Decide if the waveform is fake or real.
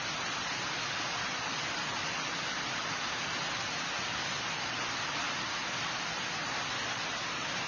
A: real